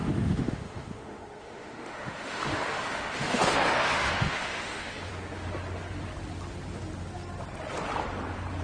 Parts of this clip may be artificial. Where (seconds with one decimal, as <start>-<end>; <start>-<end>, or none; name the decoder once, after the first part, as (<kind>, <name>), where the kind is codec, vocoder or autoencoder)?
0.0-5.1 (autoencoder, DAC-VAE)